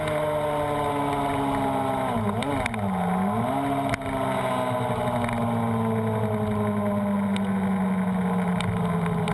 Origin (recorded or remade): recorded